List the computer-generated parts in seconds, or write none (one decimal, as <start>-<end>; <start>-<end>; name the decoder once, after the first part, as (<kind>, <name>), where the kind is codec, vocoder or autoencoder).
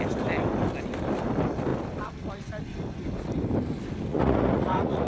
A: 4.1-5.1 (vocoder, Vocos)